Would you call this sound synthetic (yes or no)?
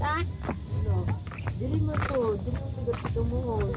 no